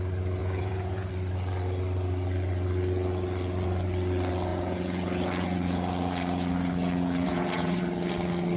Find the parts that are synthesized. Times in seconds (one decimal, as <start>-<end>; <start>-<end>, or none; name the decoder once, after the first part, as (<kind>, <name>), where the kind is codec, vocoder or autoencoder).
0.4-1.1 (vocoder, Vocos); 4.5-7.8